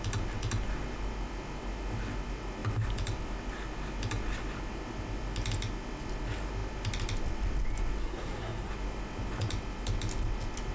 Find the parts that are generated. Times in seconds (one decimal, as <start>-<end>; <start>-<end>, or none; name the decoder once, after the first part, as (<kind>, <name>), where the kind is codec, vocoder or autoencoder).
8.0-8.7 (codec, SNAC)